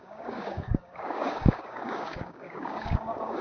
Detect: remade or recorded remade